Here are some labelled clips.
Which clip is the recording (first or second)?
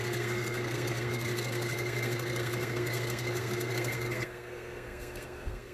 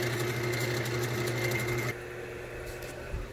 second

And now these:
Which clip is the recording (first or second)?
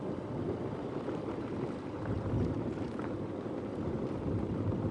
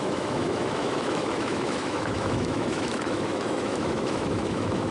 first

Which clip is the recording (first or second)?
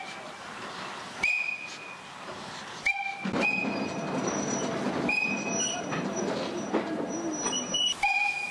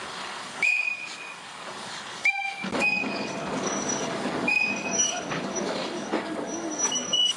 first